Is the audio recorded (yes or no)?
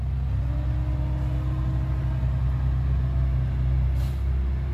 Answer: yes